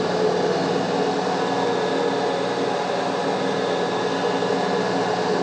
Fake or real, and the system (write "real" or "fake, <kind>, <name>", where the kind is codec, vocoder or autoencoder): real